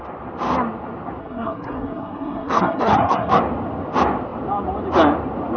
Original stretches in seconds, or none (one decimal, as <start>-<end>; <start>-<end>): 0.0-1.2; 3.4-5.6